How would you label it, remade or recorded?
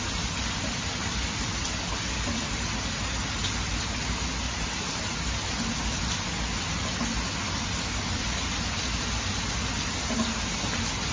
recorded